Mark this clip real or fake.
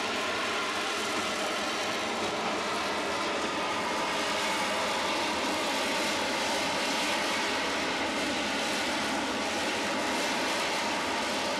real